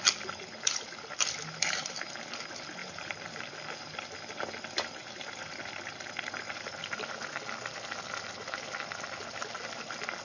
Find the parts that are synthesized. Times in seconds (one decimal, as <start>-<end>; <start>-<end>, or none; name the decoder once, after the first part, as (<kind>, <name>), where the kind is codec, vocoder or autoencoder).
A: 2.8-3.5 (vocoder, BigVGAN v2); 5.0-5.5